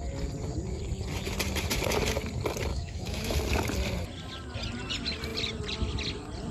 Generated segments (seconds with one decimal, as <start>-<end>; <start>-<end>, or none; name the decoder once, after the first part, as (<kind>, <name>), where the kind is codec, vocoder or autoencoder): 2.7-3.3 (autoencoder, DAC-VAE)